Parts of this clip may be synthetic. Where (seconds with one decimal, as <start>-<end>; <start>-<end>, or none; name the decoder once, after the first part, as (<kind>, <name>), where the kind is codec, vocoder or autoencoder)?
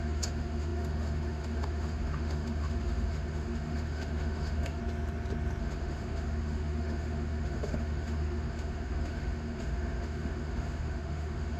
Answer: 0.0-4.8 (autoencoder, DAC-VAE); 5.6-11.6